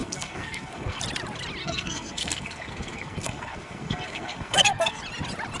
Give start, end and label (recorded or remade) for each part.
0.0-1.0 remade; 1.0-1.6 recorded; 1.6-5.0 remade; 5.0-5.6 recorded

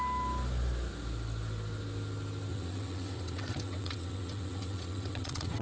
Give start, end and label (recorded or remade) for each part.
0.0-2.5 recorded; 2.5-5.6 remade